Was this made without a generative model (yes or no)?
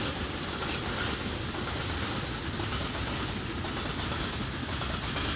yes